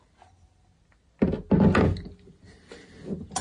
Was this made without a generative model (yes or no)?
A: yes